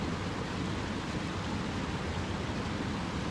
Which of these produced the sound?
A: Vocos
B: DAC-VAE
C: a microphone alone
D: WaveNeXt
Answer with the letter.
C